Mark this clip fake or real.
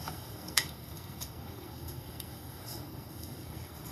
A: fake